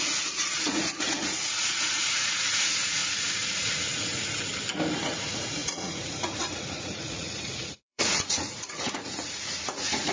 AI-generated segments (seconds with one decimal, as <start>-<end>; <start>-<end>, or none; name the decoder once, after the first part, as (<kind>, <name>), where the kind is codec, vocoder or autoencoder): 0.0-4.5 (vocoder, Vocos); 5.0-10.1